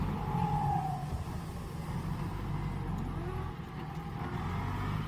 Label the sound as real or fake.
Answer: real